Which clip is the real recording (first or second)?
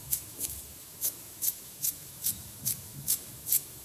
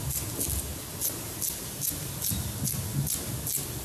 second